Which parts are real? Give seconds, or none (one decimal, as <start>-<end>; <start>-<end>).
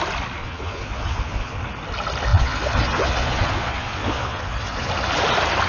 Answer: 0.0-0.4; 1.6-2.3; 4.9-5.7